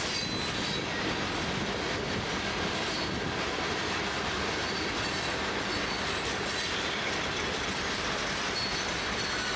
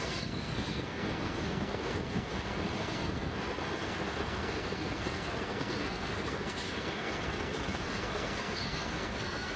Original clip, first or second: first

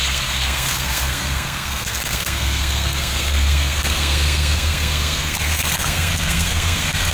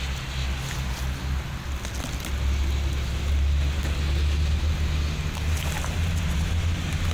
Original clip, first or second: second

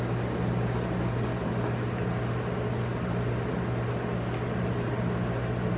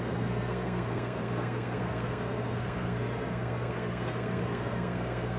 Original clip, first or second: first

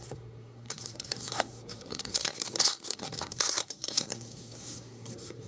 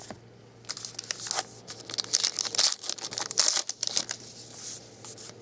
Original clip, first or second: second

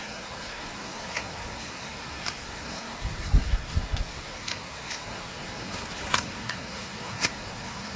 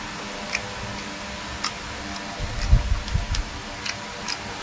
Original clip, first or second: second